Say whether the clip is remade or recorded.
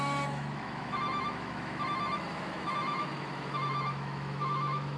remade